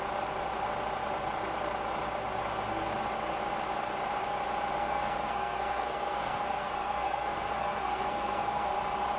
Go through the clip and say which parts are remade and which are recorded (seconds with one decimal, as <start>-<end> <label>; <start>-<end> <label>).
0.0-4.8 recorded; 4.8-8.7 remade; 8.7-9.2 recorded